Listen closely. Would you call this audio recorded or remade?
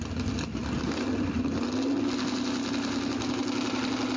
recorded